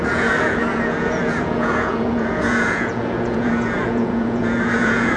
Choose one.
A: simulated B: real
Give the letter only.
A